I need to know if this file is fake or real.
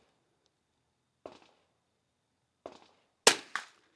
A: real